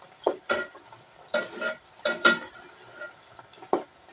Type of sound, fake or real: real